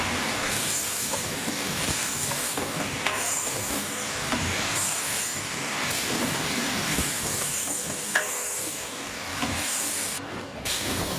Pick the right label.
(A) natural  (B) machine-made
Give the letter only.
B